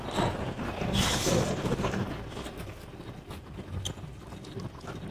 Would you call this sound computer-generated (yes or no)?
no